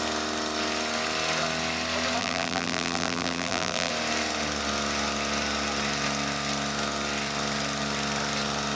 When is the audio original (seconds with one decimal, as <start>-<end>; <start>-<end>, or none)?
0.0-2.2; 3.9-8.7